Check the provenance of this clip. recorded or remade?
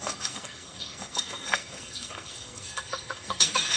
remade